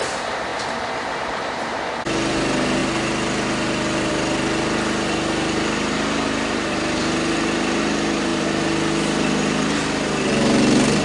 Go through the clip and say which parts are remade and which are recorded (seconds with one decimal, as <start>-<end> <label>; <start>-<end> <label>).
0.0-11.0 recorded